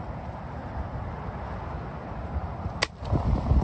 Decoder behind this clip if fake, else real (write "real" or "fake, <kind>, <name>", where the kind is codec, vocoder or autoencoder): real